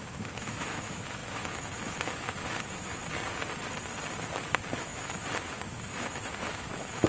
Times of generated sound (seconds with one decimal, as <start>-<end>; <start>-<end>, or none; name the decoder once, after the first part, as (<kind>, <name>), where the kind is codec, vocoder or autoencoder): 0.0-3.0 (autoencoder, DAC-VAE); 4.4-7.1